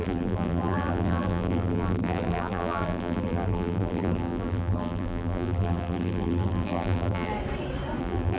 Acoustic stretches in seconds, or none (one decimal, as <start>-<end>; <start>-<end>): 7.3-8.0